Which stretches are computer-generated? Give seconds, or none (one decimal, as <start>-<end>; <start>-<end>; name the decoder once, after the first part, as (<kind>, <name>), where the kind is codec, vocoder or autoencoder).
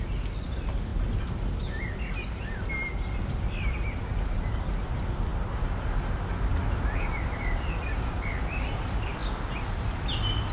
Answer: none